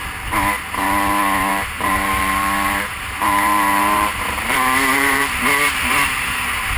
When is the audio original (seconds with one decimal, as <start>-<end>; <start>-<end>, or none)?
0.0-1.5; 5.4-6.8

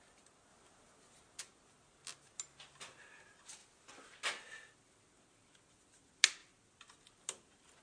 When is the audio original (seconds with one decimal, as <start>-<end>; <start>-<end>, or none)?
0.0-7.8